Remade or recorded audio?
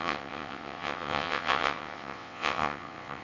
remade